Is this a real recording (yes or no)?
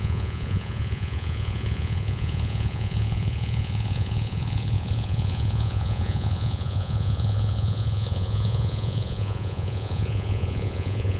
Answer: no